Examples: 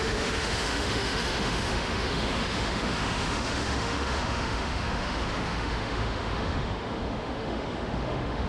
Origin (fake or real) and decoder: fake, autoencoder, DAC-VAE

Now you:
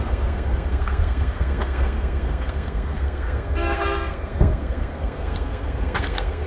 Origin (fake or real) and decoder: fake, codec, SNAC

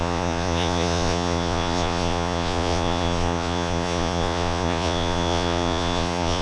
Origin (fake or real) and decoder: fake, vocoder, Vocos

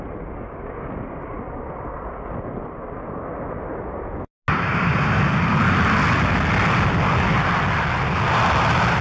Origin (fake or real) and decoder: real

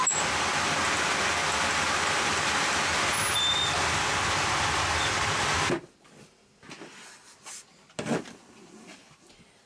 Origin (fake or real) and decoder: real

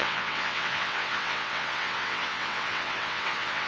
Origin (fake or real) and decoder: fake, vocoder, WaveNeXt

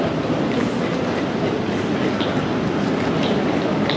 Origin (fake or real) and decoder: real